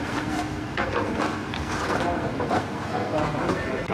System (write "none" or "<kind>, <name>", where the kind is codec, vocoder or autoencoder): codec, SNAC